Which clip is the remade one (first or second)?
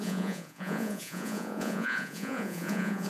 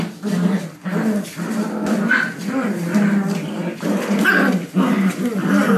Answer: first